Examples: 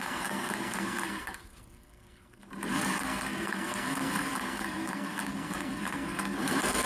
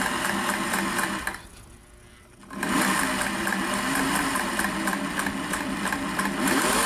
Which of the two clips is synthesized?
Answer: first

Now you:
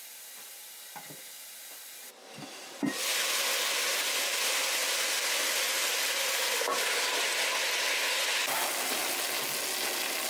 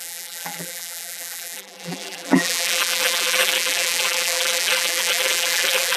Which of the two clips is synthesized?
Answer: second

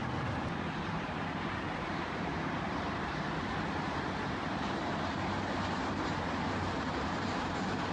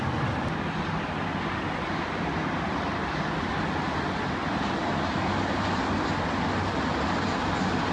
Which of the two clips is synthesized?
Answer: first